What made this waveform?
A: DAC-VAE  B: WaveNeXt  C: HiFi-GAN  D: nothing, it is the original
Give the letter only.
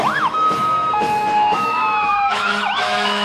A